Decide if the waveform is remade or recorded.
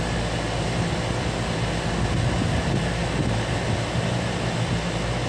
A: recorded